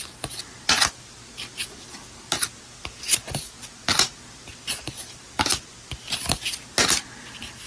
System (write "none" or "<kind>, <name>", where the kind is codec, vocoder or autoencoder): none